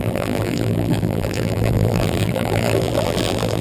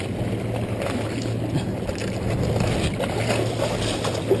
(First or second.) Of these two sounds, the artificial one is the first